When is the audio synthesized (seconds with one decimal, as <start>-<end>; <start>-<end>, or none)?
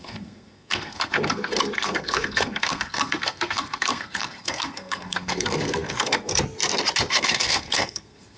0.0-6.3; 7.1-8.4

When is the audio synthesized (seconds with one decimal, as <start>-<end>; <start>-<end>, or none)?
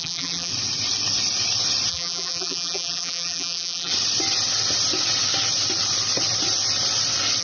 0.0-0.5; 1.9-3.9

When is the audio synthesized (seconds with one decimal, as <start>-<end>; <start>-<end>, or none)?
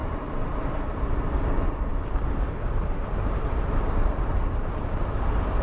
0.0-1.0; 1.9-4.2